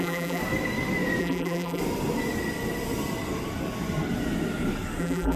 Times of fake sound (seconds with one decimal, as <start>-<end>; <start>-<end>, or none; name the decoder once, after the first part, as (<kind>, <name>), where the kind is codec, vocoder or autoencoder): 0.0-0.4 (vocoder, BigVGAN v2); 1.2-1.8; 5.0-5.4